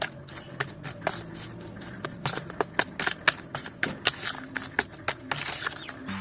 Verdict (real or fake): real